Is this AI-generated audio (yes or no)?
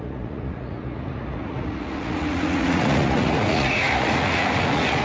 yes